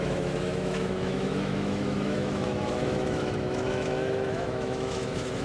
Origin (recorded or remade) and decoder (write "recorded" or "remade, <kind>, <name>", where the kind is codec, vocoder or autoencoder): remade, autoencoder, DAC-VAE